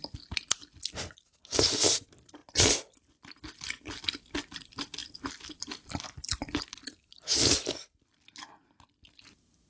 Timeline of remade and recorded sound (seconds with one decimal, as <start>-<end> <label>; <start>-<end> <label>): 0.0-9.7 recorded